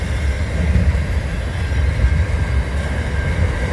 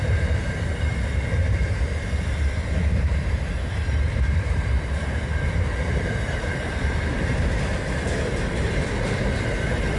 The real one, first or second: first